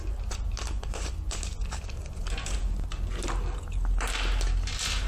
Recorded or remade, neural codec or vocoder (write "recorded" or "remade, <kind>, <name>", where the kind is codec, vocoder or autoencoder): recorded